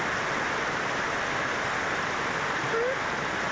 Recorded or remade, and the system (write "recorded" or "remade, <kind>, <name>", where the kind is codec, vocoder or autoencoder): recorded